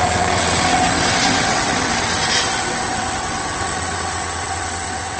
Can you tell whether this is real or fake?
fake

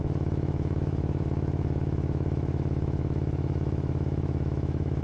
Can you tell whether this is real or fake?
fake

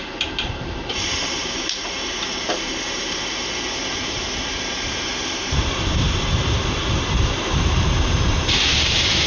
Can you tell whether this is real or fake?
fake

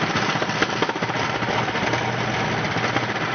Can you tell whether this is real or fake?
real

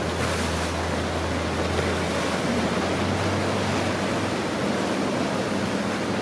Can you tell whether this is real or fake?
real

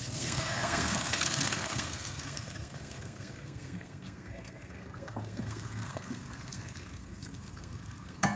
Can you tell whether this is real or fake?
fake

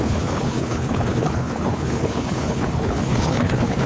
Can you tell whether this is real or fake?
fake